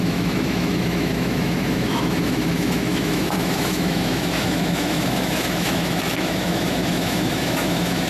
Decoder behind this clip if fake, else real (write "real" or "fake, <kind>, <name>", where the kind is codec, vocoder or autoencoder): fake, autoencoder, DAC-VAE